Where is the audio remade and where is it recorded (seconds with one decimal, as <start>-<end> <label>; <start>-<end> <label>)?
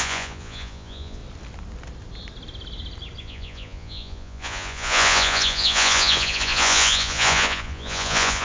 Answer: 0.0-1.2 remade; 1.2-3.2 recorded; 3.2-8.4 remade